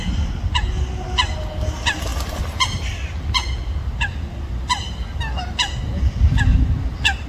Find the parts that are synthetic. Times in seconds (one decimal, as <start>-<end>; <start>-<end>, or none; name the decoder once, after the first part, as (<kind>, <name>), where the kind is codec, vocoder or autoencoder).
none